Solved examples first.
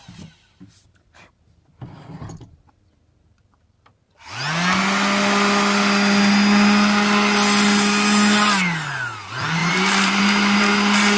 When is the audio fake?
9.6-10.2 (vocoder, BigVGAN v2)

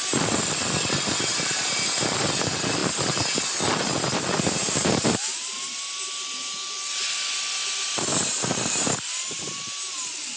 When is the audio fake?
1.3-2.2 (vocoder, BigVGAN v2); 4.6-5.4; 8.1-8.9

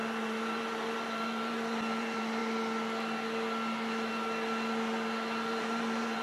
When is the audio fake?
0.0-2.4 (vocoder, BigVGAN v2); 5.5-6.2

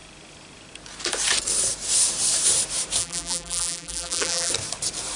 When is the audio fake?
3.0-4.5 (vocoder, BigVGAN v2)

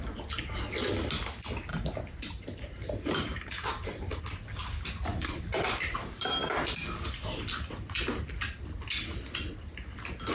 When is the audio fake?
1.7-4.2 (vocoder, BigVGAN v2); 5.1-6.5

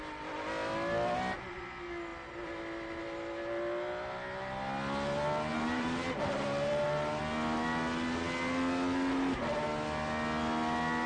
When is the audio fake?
5.5-7.2 (vocoder, BigVGAN v2)

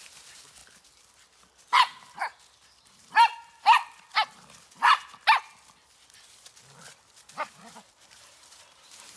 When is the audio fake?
0.0-0.6 (vocoder, BigVGAN v2); 2.5-3.8; 7.5-9.2

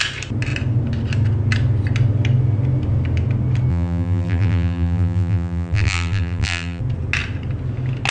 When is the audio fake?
3.7-6.8 (vocoder, BigVGAN v2)